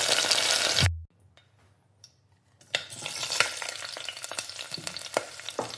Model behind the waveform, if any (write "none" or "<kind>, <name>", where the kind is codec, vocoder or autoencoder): none